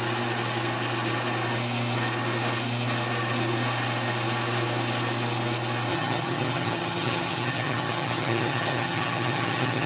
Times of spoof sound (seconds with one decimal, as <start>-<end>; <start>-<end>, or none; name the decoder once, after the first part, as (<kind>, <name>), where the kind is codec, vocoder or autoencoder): 5.9-9.9 (vocoder, HiFi-GAN)